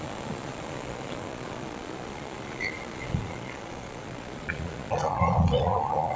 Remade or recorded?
remade